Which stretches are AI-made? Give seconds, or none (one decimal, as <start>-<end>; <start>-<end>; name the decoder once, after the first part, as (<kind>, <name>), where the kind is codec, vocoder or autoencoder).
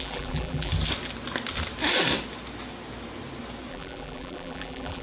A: 0.0-0.7 (vocoder, BigVGAN v2); 3.7-5.0